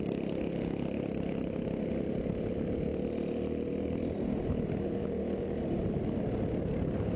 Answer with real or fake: real